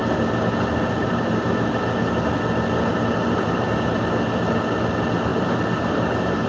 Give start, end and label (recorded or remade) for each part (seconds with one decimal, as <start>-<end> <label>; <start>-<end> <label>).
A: 0.0-1.0 recorded; 1.0-1.5 remade; 1.5-2.9 recorded; 2.9-4.0 remade; 4.0-5.3 recorded; 5.3-6.5 remade